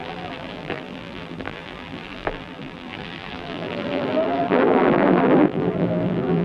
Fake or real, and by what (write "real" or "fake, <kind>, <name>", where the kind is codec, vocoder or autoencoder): fake, vocoder, BigVGAN v2